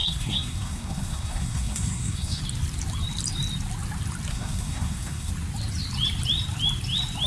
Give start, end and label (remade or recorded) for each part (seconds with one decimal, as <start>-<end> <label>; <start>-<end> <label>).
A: 0.0-2.4 remade; 2.4-4.3 recorded; 4.3-5.3 remade; 5.3-7.3 recorded